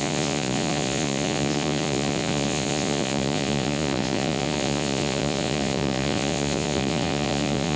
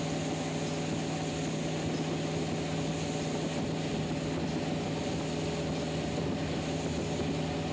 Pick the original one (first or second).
second